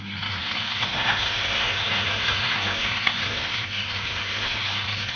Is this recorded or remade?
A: remade